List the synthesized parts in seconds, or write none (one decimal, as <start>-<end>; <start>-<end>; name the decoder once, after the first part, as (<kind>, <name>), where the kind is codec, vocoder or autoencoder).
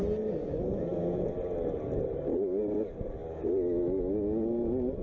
none